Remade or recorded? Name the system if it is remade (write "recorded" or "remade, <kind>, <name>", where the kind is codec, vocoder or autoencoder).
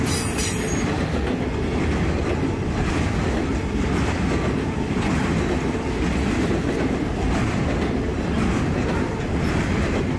recorded